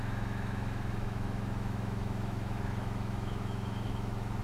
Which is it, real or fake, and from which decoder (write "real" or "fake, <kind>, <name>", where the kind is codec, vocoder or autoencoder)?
fake, autoencoder, DAC-VAE